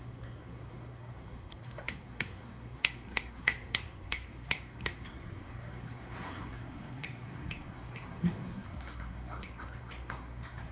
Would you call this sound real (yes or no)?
no